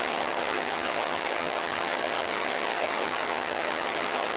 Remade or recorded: remade